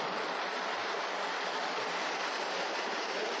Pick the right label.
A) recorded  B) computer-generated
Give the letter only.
B